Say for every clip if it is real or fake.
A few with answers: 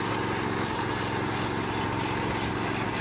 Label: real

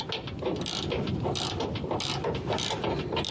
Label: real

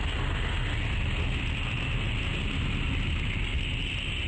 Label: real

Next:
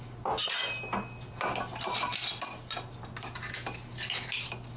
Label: real